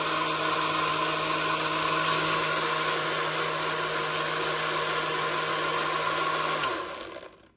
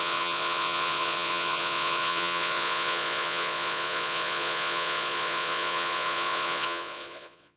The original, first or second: first